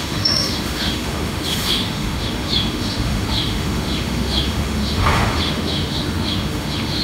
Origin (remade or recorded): remade